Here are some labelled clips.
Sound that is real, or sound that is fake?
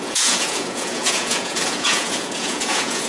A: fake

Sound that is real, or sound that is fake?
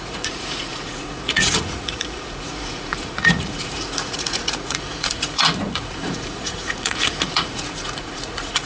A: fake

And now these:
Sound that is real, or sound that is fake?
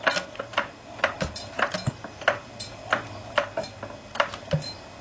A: real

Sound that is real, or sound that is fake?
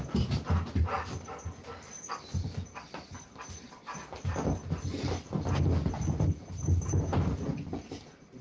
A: real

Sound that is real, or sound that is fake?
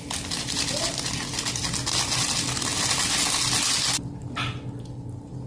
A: real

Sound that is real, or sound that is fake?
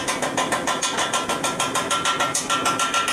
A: real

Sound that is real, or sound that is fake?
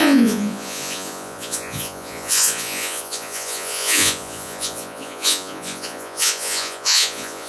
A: fake